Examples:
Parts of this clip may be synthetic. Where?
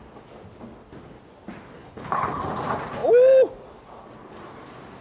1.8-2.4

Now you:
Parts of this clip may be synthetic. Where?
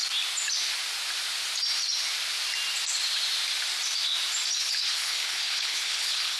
4.6-6.4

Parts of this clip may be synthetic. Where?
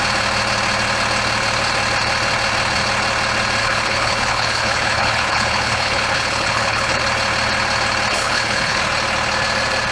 3.6-7.0; 8.1-8.8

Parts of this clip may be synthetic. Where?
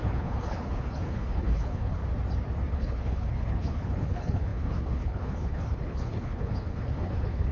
0.0-2.0; 2.7-7.5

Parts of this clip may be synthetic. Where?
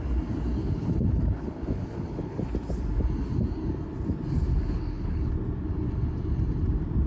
0.6-2.4; 4.5-5.3